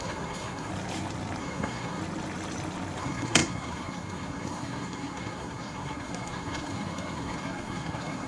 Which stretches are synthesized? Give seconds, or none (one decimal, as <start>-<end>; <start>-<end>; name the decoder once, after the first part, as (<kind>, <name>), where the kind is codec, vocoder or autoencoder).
0.0-0.7 (codec, SNAC); 1.4-2.0; 3.0-8.3